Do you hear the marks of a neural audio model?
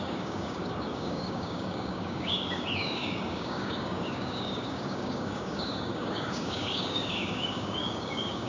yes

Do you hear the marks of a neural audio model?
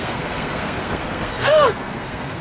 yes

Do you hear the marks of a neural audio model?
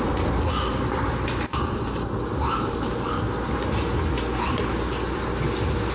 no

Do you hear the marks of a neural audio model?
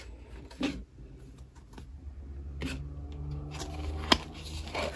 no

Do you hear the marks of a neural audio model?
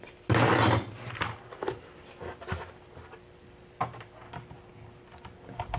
yes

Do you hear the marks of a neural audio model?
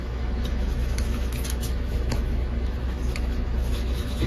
yes